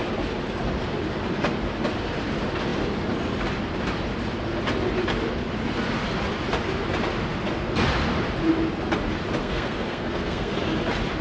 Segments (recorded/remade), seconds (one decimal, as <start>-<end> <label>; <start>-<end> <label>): 0.0-9.4 recorded; 9.4-10.6 remade; 10.6-11.2 recorded